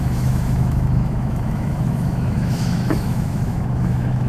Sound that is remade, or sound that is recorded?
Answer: remade